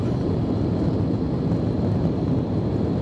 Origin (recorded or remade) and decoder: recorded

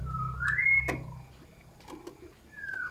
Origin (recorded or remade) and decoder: recorded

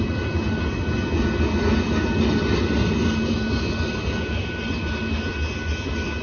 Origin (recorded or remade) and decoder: recorded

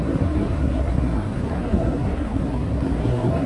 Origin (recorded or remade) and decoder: remade, codec, SNAC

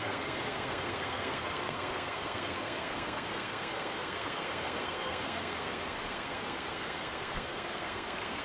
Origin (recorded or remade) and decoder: remade, codec, SNAC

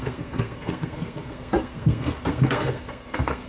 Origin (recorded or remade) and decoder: remade, codec, SNAC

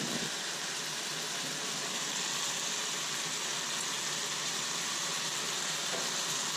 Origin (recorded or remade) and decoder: recorded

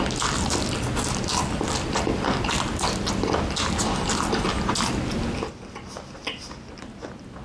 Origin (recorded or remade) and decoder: recorded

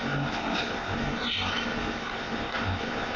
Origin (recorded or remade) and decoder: remade, codec, SNAC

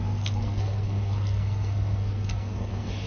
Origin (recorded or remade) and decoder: remade, codec, SNAC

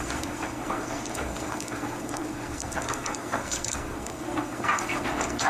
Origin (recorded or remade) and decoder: remade, codec, SNAC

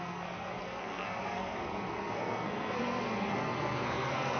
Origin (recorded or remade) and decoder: remade, codec, SNAC